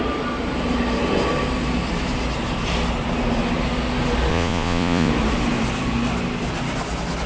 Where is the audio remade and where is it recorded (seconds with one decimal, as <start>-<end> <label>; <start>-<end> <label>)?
0.0-4.3 recorded; 4.3-5.1 remade; 5.1-7.3 recorded